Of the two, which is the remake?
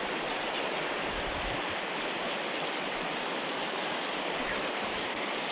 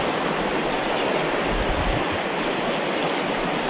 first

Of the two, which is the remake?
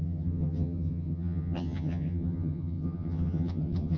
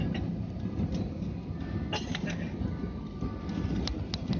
first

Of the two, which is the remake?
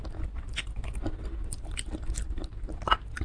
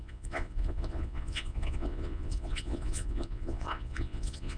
second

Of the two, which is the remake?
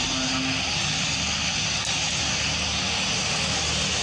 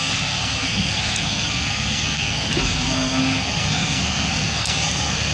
second